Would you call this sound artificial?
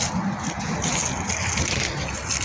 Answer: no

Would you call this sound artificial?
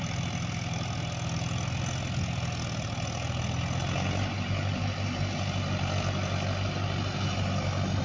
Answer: no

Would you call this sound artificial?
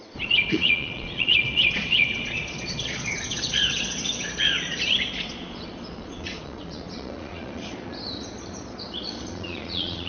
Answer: yes